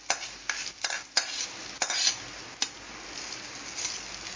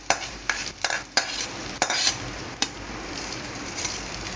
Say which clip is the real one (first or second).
first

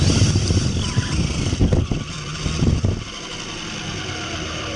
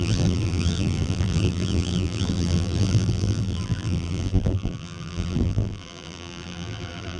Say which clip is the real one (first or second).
first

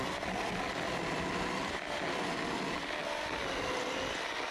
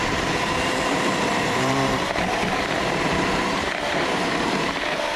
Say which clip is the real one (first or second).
first